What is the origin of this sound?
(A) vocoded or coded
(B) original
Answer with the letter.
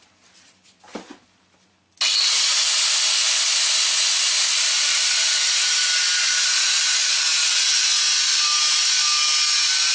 B